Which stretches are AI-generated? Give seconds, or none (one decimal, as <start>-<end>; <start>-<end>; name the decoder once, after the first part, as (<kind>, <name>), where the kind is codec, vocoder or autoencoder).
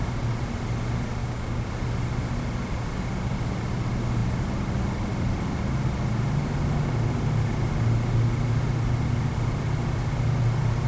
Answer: 1.2-1.7 (codec, DAC)